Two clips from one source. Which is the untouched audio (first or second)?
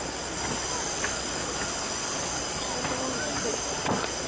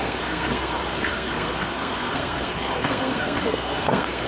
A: first